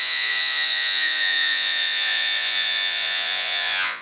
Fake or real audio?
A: fake